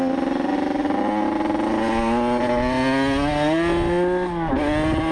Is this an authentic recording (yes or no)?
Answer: yes